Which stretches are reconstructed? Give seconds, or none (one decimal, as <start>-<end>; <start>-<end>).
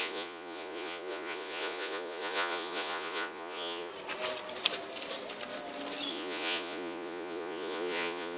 0.0-3.9; 6.1-8.4